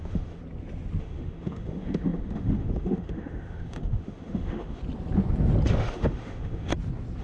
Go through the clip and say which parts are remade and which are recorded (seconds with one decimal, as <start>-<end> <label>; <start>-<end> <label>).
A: 0.0-0.4 remade; 0.4-1.0 recorded; 1.0-4.8 remade; 4.8-5.7 recorded; 5.7-6.7 remade; 6.7-7.2 recorded